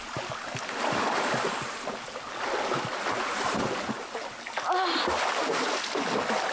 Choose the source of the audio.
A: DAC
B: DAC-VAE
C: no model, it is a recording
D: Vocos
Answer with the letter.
C